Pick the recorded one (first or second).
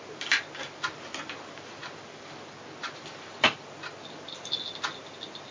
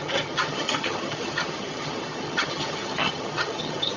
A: first